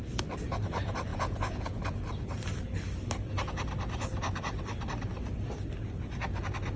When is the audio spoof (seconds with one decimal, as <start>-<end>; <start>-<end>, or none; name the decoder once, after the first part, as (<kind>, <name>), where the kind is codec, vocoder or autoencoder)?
1.1-1.8 (vocoder, Vocos)